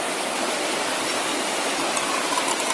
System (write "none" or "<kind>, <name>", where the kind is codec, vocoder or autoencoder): none